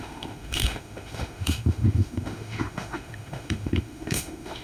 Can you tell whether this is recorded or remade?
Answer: remade